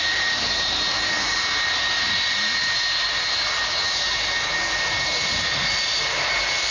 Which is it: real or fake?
real